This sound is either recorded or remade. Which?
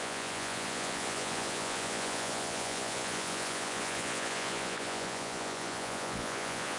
remade